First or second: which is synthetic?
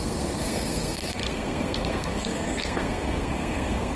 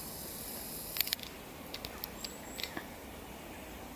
first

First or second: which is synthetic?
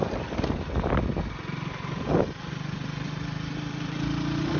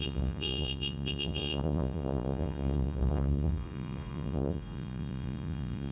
second